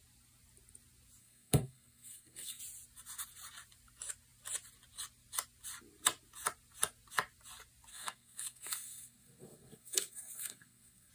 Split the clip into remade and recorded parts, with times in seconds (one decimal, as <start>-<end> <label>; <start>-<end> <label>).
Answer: 0.0-1.2 recorded; 1.2-2.6 remade; 2.6-7.9 recorded; 7.9-11.1 remade